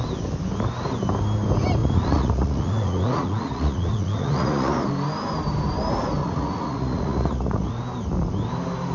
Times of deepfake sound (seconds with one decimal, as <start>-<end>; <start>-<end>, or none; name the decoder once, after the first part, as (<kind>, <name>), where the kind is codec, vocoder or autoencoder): 1.8-4.9 (vocoder, Vocos); 6.2-7.7